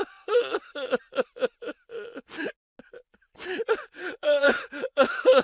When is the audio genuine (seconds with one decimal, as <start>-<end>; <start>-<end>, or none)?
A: 0.6-3.8